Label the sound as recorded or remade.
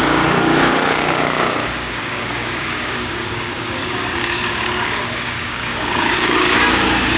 remade